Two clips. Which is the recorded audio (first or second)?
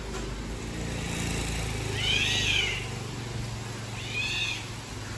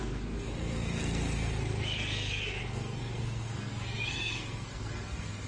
first